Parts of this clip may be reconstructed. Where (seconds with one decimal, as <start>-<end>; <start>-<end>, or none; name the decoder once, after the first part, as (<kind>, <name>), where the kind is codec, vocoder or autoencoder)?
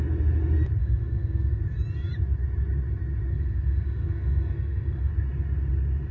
0.8-1.6 (codec, SNAC); 3.3-5.1